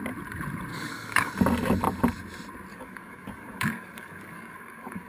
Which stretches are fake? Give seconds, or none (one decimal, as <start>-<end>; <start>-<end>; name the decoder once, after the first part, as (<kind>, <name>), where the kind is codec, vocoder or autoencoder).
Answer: 0.7-1.3 (codec, DAC); 2.7-5.1